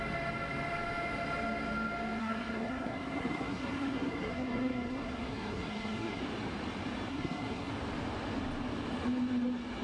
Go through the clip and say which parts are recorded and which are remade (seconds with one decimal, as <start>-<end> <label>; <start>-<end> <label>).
0.0-2.2 recorded; 2.2-6.2 remade; 6.2-7.1 recorded; 7.1-7.7 remade; 7.7-9.8 recorded